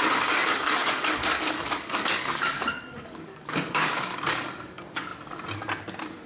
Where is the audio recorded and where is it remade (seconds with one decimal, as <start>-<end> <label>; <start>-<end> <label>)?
0.0-5.1 remade; 5.1-6.3 recorded